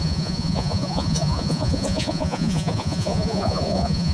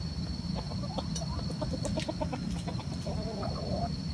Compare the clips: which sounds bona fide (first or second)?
second